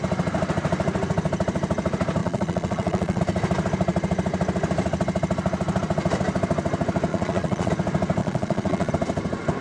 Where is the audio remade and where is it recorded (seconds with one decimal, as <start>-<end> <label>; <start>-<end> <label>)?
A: 0.0-2.2 recorded; 2.2-3.2 remade; 3.2-7.1 recorded; 7.1-7.7 remade; 7.7-8.2 recorded; 8.2-8.9 remade; 8.9-9.6 recorded